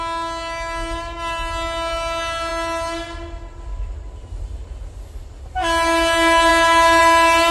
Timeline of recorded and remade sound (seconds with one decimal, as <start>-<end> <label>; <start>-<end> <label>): 0.0-7.5 recorded